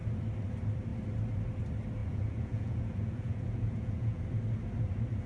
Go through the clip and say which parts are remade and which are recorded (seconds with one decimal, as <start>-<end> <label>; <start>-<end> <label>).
0.0-2.0 recorded; 2.0-4.2 remade; 4.2-5.3 recorded